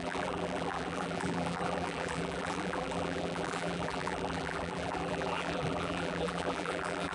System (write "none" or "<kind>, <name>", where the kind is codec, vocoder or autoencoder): vocoder, BigVGAN v2